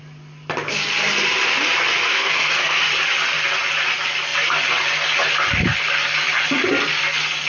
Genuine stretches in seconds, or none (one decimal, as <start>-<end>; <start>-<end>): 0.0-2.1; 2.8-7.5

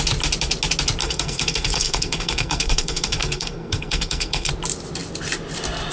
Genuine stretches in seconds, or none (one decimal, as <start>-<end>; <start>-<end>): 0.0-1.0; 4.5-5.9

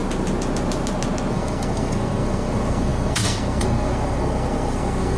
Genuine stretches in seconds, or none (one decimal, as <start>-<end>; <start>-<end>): 0.0-1.3

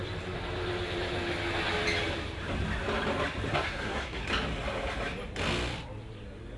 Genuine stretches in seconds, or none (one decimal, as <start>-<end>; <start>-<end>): 0.0-3.5; 4.2-6.6